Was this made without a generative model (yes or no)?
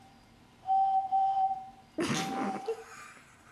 yes